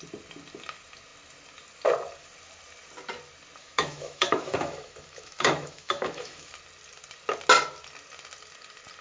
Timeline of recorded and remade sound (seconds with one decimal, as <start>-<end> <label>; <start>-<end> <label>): 0.0-3.6 recorded; 3.6-6.5 remade; 6.5-9.0 recorded